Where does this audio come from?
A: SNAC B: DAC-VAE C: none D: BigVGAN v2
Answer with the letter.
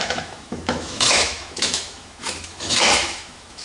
B